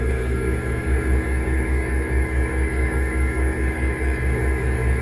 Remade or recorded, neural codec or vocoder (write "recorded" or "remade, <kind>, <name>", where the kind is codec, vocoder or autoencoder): remade, codec, DAC